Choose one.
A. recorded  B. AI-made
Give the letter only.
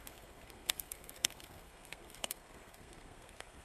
B